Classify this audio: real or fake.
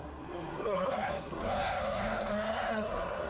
fake